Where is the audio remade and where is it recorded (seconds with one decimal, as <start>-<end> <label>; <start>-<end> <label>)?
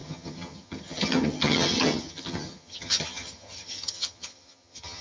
0.0-5.0 remade